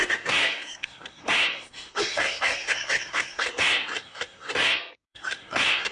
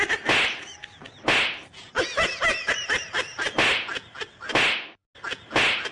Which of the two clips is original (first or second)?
second